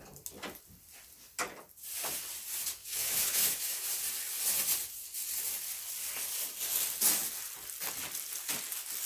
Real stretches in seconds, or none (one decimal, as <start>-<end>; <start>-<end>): 0.0-2.8; 3.9-9.1

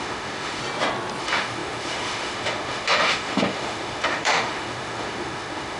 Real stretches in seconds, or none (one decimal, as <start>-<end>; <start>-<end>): 0.6-1.2